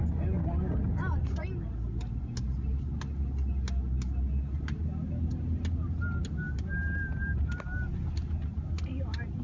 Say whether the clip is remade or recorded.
recorded